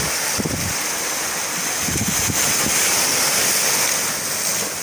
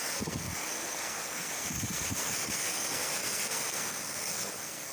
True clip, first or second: first